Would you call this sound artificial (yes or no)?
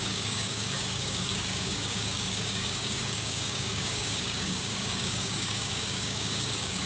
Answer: yes